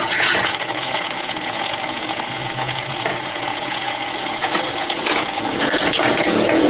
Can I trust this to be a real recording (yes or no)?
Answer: no